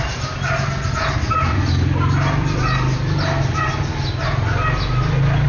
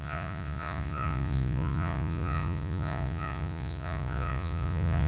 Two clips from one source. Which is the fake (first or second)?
second